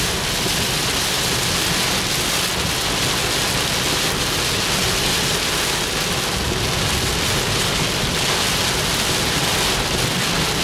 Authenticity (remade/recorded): recorded